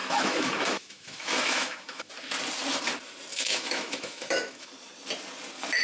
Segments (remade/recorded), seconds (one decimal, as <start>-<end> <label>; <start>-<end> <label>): 0.0-2.1 remade; 2.1-3.3 recorded; 3.3-4.7 remade; 4.7-5.8 recorded